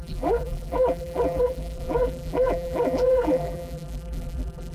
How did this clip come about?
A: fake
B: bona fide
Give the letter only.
A